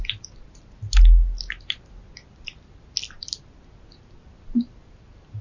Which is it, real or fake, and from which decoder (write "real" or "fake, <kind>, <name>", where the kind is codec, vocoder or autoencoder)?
real